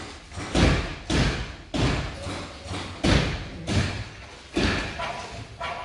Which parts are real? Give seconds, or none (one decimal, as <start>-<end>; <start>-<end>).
0.0-5.8